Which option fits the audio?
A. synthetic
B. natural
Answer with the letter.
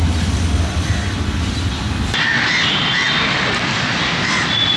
B